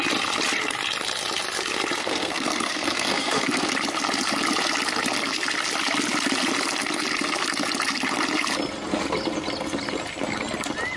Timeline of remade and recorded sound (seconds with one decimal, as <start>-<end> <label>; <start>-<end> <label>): 0.0-2.0 recorded; 2.0-3.7 remade; 3.7-11.0 recorded